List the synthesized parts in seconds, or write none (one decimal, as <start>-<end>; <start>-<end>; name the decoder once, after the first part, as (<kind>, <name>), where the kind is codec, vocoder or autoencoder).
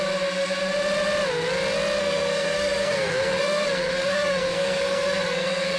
2.0-5.8 (codec, SNAC)